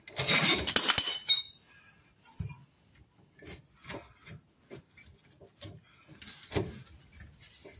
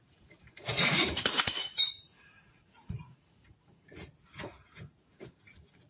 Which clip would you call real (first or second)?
first